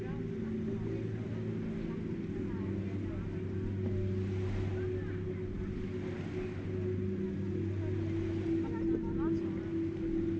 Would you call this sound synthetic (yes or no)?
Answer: no